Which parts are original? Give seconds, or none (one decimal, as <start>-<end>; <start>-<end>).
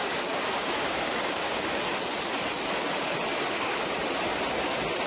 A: 1.6-3.3; 3.9-5.1